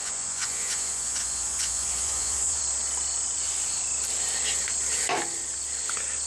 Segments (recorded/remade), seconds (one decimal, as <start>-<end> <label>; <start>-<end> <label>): 0.0-2.6 remade; 2.6-6.3 recorded